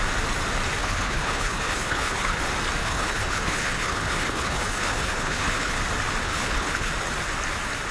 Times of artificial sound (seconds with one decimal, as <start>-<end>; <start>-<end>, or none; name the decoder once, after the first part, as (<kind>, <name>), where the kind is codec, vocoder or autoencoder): 0.8-2.4 (codec, HILCodec); 2.8-5.8; 6.2-6.9

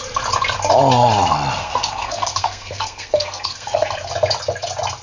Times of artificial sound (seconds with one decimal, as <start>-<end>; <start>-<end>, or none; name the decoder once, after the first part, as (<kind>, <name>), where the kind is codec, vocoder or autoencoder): 1.6-4.1 (codec, SNAC)

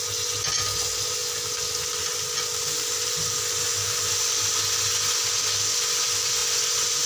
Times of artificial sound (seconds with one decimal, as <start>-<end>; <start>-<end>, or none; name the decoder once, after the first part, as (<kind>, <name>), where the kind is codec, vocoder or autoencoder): none

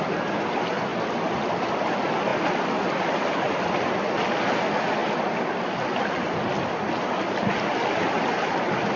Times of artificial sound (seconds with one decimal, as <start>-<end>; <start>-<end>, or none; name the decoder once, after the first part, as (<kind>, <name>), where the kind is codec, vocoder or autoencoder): 0.9-1.5 (vocoder, BigVGAN v2)

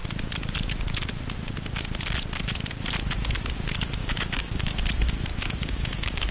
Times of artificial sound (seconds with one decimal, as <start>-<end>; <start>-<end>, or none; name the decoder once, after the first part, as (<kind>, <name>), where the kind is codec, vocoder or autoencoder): 4.0-4.8 (codec, DAC); 5.3-6.3

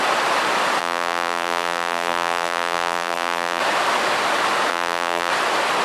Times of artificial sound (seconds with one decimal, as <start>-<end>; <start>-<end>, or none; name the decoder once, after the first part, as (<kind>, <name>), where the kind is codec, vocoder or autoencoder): 0.8-3.6 (vocoder, BigVGAN v2); 4.7-5.3

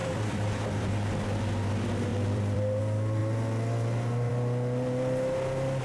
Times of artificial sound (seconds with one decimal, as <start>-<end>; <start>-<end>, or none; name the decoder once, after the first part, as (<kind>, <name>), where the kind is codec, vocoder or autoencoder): 0.0-0.9 (vocoder, BigVGAN v2); 2.1-2.8